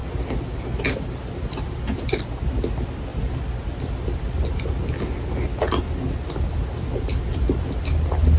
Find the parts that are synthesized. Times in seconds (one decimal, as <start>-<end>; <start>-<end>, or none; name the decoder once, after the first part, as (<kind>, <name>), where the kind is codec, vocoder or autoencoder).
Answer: none